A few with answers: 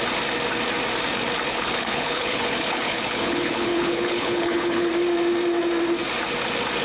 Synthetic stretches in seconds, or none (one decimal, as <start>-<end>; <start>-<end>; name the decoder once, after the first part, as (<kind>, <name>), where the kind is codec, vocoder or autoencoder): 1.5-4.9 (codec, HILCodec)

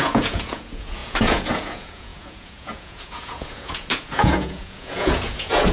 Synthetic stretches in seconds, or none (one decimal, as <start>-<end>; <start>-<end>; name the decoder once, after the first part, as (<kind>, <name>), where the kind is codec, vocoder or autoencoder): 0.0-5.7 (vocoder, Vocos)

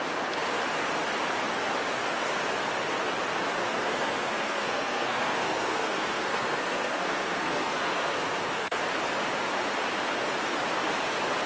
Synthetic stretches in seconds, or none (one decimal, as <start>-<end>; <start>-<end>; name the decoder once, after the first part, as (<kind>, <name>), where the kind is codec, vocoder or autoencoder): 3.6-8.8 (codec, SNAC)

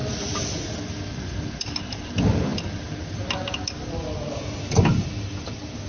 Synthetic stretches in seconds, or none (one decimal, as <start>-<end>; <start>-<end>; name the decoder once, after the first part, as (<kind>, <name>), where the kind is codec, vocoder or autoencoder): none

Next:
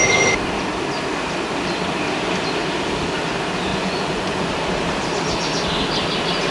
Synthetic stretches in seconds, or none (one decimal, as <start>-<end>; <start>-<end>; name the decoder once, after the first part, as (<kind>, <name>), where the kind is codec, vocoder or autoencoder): 3.7-4.5 (vocoder, Vocos)

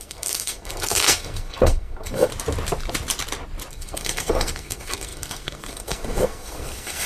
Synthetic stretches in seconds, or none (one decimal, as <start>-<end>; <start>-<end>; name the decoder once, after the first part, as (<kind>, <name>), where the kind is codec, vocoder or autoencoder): 0.0-2.3 (codec, SNAC); 3.7-7.1